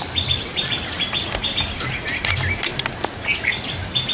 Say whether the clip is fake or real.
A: fake